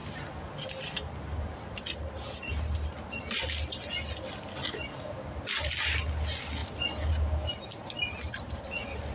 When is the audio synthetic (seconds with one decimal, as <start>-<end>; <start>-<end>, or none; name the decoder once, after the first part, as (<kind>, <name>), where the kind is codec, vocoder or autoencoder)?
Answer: none